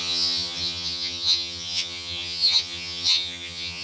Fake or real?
fake